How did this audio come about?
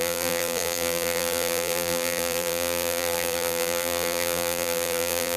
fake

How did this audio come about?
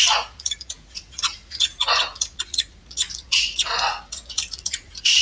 fake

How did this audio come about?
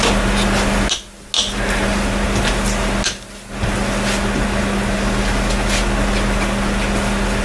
real